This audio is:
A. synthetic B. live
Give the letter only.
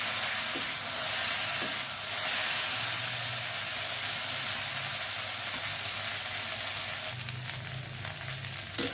B